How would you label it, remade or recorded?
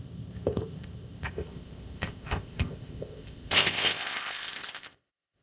remade